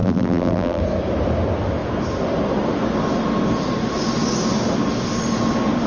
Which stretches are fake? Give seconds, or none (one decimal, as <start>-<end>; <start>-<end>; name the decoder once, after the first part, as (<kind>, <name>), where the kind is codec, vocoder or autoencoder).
0.0-0.8 (vocoder, BigVGAN v2)